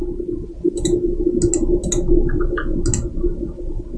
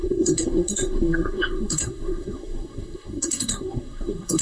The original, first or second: first